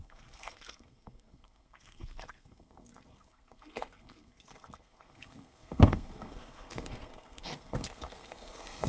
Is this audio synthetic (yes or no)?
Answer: yes